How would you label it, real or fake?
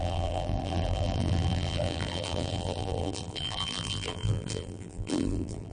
fake